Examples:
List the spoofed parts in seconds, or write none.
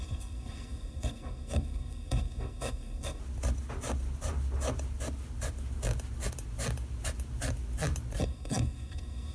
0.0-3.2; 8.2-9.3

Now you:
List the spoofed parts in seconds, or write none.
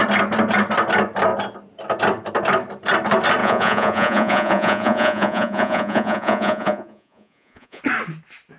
3.4-7.8